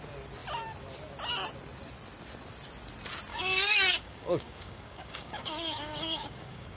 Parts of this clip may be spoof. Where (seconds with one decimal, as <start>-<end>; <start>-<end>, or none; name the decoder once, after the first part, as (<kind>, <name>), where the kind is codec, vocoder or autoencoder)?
3.3-6.8 (codec, DAC)